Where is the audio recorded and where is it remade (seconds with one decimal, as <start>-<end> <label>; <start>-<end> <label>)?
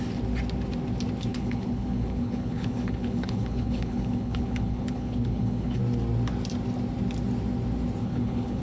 0.0-1.3 recorded; 1.3-5.8 remade; 5.8-8.0 recorded; 8.0-8.6 remade